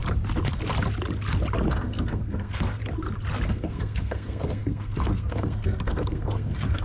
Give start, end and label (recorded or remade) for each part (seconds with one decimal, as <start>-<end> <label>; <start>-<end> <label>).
0.0-1.7 recorded; 1.7-2.8 remade; 2.8-3.5 recorded; 3.5-6.8 remade